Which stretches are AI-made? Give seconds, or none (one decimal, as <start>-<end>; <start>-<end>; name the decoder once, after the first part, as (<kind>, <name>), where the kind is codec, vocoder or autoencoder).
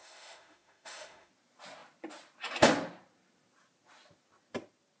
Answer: 0.0-1.3 (autoencoder, DAC-VAE)